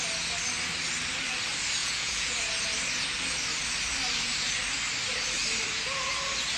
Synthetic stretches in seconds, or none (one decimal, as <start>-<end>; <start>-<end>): 1.8-2.4